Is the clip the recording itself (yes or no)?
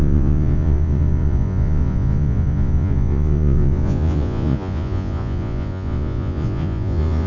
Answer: no